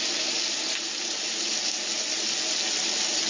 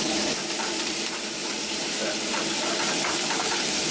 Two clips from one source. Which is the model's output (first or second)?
second